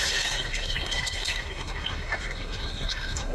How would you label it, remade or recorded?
remade